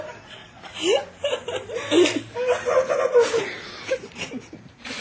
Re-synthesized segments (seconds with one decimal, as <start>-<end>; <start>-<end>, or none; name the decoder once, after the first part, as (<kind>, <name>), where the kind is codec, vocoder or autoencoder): none